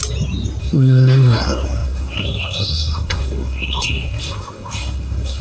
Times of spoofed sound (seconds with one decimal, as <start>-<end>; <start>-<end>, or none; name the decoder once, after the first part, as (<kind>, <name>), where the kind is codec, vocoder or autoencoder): 0.6-5.4 (codec, SNAC)